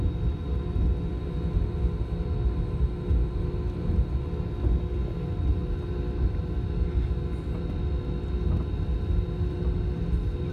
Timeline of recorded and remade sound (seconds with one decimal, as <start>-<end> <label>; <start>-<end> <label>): 0.0-10.5 recorded